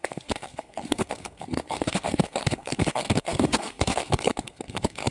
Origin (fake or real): fake